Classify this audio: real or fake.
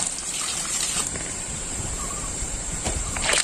fake